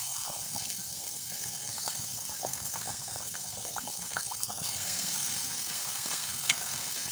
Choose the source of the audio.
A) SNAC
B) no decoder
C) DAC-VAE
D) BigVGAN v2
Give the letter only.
A